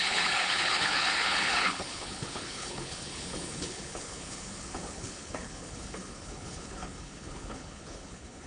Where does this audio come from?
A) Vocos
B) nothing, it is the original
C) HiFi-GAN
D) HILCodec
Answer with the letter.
D